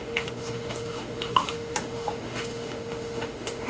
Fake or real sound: fake